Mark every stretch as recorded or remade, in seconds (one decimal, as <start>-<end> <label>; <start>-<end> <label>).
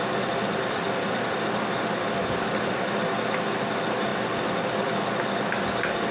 0.0-6.1 recorded